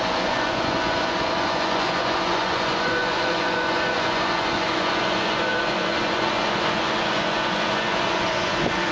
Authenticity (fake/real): fake